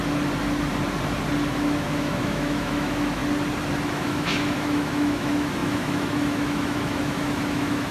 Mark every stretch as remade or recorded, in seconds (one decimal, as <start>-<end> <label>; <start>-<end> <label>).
0.0-1.5 recorded; 1.5-3.2 remade; 3.2-3.9 recorded; 3.9-7.9 remade